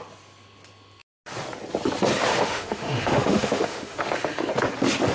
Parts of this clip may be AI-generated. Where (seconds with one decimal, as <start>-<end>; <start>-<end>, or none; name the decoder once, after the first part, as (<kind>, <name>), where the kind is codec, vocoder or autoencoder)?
2.3-4.5 (autoencoder, DAC-VAE)